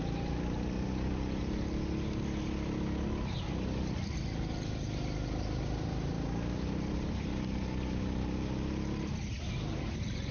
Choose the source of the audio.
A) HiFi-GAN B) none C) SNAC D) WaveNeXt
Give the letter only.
B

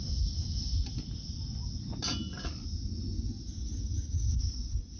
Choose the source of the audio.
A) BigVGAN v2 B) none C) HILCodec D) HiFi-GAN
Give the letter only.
B